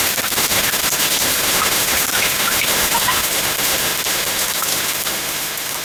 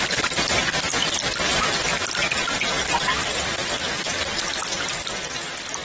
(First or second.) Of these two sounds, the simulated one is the first